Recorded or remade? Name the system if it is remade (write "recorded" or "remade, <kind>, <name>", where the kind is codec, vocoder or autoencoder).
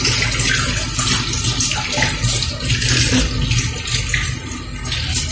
recorded